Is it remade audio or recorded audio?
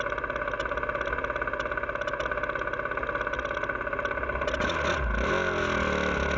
recorded